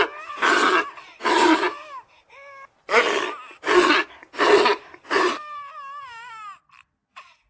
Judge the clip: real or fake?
real